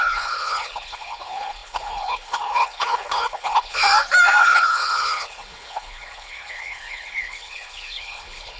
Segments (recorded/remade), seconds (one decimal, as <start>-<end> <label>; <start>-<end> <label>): 0.0-3.8 remade; 3.8-4.4 recorded; 4.4-8.6 remade